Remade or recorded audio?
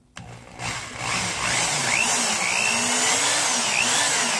recorded